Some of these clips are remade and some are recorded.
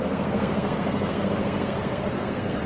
remade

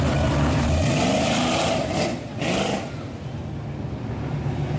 recorded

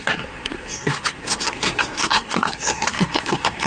remade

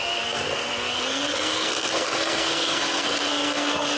remade